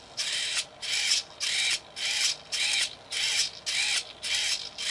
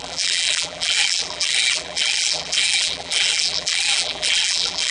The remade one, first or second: second